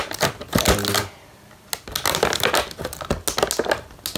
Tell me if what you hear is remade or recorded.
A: recorded